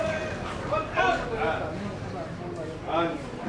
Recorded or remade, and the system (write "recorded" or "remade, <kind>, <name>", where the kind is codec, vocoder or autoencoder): recorded